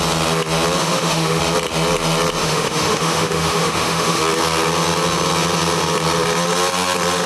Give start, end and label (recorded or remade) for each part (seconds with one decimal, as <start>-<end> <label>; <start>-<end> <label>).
0.0-0.8 recorded; 0.8-1.4 remade; 1.4-2.4 recorded; 2.4-4.2 remade; 4.2-7.3 recorded